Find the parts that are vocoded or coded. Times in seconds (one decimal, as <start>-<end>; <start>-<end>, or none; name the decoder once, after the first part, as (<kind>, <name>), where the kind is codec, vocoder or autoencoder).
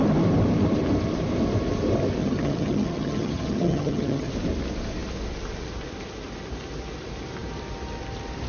2.2-4.3 (vocoder, HiFi-GAN)